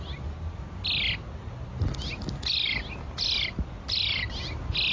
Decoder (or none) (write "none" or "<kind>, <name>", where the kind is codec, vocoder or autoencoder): none